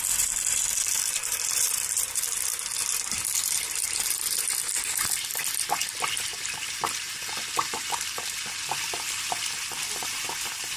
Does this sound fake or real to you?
fake